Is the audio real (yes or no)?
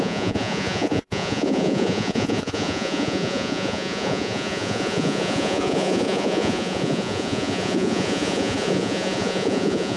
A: no